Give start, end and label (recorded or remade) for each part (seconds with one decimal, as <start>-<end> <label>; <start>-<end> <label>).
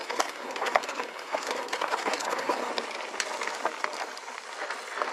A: 0.0-2.7 remade; 2.7-5.1 recorded